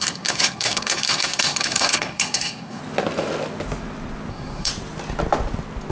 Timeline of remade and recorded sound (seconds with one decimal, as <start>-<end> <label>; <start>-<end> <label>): 0.0-2.8 remade; 2.8-4.3 recorded; 4.3-4.7 remade; 4.7-5.9 recorded